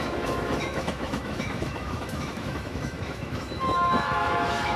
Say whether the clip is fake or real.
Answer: fake